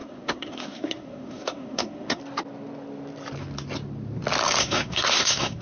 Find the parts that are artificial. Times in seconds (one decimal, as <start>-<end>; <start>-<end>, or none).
0.0-2.2; 4.6-5.6